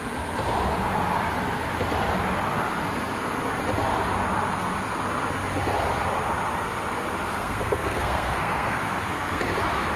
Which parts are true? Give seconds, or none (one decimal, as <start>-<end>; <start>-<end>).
0.0-7.3; 9.4-10.0